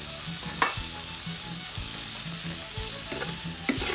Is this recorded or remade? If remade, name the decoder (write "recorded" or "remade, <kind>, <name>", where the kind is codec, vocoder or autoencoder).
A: recorded